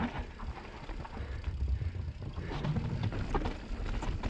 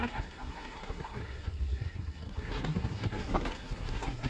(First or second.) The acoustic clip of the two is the first